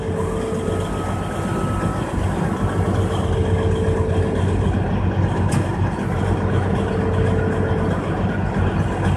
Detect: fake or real real